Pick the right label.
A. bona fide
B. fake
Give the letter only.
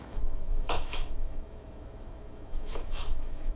B